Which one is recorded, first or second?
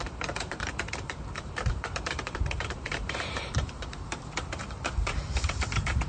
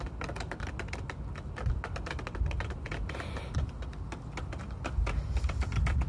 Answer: second